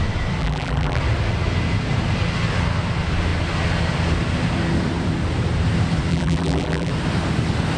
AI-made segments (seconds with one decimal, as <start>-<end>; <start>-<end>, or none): 0.4-1.0; 6.1-6.9